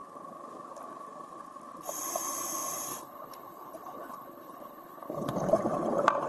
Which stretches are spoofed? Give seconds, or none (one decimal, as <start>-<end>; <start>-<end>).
2.9-5.5